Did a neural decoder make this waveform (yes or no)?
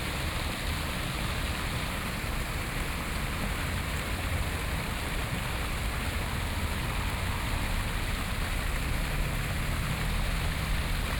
no